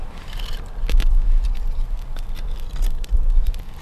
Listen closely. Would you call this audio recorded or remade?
recorded